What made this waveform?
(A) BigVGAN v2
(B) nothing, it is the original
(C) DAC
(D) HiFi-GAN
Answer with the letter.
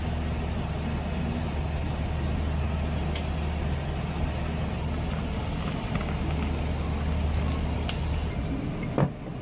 B